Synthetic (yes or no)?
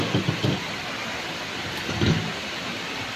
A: yes